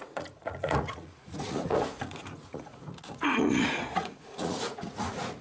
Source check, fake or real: fake